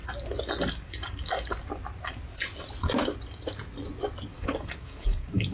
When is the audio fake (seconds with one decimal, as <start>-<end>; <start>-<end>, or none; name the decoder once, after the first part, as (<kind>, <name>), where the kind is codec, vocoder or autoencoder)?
0.7-1.6 (codec, DAC); 4.3-5.5